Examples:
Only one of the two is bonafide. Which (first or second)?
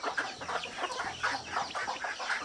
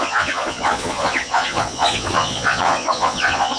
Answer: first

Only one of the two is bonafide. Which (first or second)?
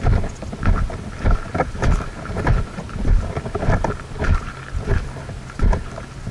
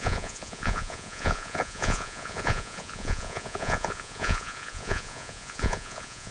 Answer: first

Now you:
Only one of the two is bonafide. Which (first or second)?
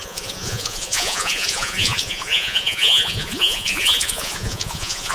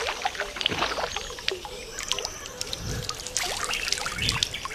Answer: second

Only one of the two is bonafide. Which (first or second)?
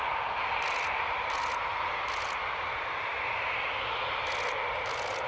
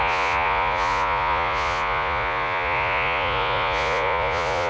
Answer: first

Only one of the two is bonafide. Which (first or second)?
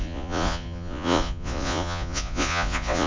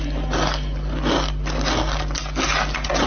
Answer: second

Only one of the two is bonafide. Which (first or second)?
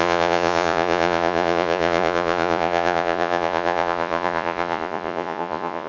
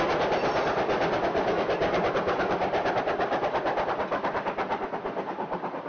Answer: second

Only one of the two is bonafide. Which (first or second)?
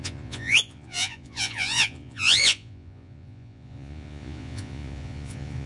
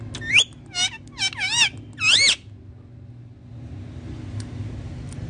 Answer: second